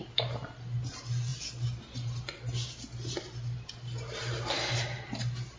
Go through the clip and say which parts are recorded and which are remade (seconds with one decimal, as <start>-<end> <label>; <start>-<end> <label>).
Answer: 0.0-5.6 recorded